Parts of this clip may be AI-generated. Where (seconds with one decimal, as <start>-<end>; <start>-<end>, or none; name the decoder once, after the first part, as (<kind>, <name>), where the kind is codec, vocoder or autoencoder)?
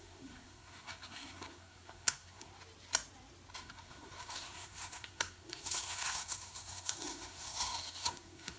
0.0-2.5 (codec, SNAC); 3.6-8.6